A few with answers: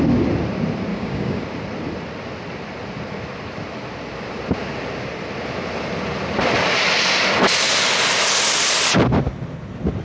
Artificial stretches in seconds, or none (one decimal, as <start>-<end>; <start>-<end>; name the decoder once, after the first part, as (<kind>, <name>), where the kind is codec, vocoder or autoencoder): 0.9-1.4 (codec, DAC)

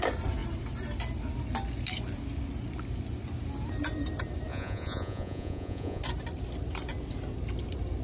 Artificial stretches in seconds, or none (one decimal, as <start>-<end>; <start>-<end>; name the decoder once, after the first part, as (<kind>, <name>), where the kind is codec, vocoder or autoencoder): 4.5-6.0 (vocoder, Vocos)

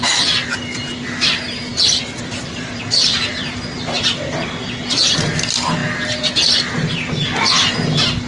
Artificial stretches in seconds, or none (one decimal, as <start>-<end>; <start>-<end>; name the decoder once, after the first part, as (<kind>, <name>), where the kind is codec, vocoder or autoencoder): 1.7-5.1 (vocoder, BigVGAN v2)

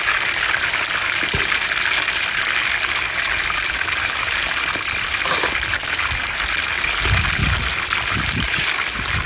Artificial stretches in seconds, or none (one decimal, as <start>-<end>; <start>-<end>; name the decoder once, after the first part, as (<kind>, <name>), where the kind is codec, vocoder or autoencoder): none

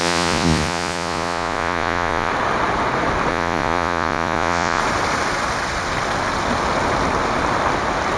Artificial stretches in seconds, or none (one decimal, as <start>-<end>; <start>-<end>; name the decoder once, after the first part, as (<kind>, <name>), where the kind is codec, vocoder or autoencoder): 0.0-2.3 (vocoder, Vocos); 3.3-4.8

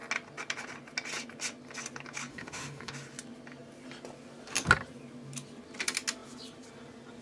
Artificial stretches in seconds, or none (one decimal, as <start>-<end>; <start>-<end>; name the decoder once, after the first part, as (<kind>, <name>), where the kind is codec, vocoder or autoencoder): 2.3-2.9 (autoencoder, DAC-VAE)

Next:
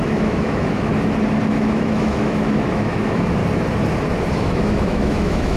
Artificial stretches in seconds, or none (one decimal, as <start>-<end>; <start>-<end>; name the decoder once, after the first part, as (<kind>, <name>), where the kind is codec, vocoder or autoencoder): 0.0-0.9 (autoencoder, DAC-VAE); 1.5-3.4; 4.3-5.6